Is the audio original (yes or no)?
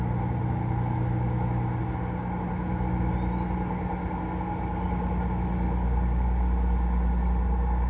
yes